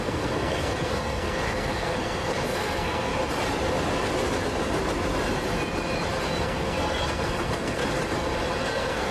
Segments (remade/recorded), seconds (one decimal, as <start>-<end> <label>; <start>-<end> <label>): 0.0-3.1 remade; 3.1-6.4 recorded; 6.4-7.8 remade; 7.8-8.6 recorded; 8.6-9.1 remade